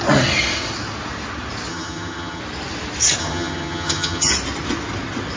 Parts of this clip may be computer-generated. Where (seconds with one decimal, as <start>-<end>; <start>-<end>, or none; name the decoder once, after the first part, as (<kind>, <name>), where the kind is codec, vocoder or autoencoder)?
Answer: 1.7-2.4 (vocoder, HiFi-GAN); 3.2-4.3